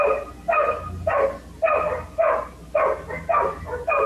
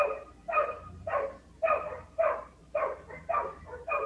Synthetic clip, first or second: second